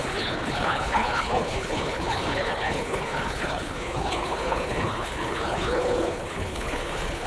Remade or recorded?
remade